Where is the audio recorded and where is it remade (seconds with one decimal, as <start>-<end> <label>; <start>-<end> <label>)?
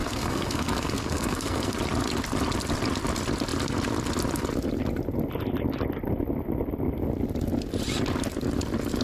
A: 0.0-1.7 remade; 1.7-9.0 recorded